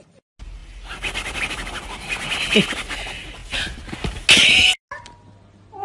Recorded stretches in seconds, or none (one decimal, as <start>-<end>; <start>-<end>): 0.0-5.8